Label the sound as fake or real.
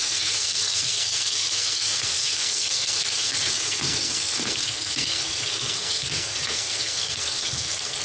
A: fake